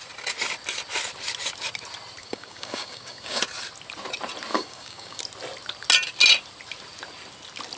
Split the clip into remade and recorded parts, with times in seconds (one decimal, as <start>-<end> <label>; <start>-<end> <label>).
0.0-2.2 recorded; 2.2-3.4 remade; 3.4-4.5 recorded; 4.5-5.2 remade; 5.2-7.8 recorded